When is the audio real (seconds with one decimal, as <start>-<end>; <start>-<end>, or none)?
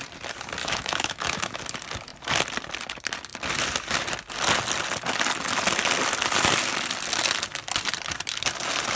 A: 0.0-0.6; 1.6-9.0